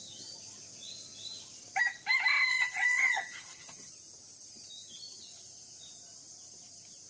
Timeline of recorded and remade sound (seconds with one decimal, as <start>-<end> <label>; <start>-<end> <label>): 0.0-2.5 recorded; 2.5-3.9 remade; 3.9-7.1 recorded